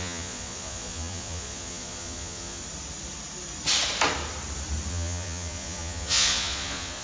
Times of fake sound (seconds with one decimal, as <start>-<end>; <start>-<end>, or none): 0.0-2.6; 4.9-7.0